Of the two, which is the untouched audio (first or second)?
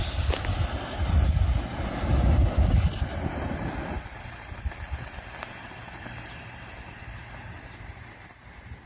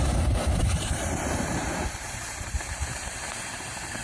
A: first